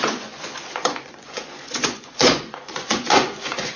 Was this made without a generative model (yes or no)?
no